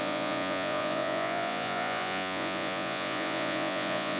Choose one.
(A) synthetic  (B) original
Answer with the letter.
A